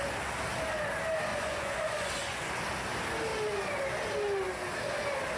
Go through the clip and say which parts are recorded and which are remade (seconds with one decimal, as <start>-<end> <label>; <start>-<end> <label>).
0.0-1.3 recorded; 1.3-2.5 remade; 2.5-5.4 recorded